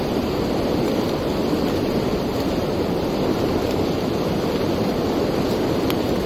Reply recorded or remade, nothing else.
recorded